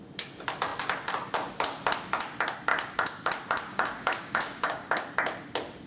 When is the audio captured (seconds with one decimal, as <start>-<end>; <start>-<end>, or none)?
0.0-2.7; 3.3-3.7; 4.9-5.9